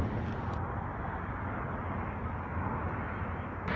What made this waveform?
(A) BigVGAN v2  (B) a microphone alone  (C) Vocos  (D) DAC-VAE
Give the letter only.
B